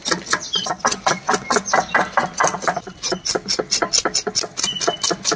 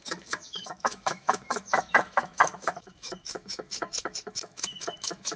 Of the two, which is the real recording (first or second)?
first